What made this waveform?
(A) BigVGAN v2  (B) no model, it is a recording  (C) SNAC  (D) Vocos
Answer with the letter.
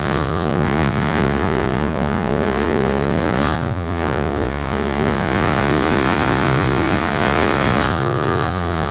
D